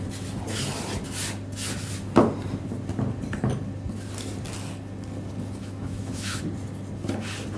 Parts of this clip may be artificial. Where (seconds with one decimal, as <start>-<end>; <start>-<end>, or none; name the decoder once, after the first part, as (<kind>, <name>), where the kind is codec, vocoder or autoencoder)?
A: 5.6-6.4 (autoencoder, DAC-VAE)